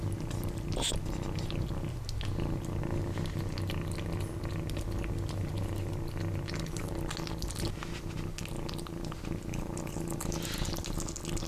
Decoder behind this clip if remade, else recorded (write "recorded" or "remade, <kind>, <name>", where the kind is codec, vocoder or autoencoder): recorded